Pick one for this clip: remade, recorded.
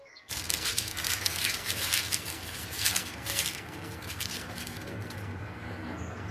remade